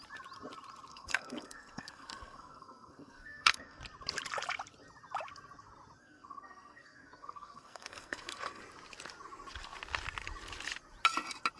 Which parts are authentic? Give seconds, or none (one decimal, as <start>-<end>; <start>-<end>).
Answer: 0.0-0.9; 3.8-6.0; 8.6-11.6